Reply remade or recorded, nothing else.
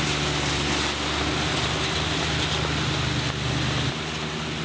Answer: recorded